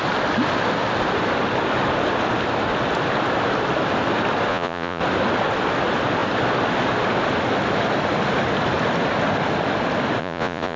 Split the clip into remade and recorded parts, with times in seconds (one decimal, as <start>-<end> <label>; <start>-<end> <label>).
0.0-4.5 recorded; 4.5-5.0 remade; 5.0-10.2 recorded; 10.2-10.8 remade